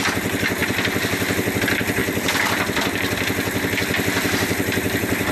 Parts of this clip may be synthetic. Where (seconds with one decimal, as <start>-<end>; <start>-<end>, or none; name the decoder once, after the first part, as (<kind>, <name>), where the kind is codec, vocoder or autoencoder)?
0.6-1.6 (vocoder, BigVGAN v2); 2.0-5.3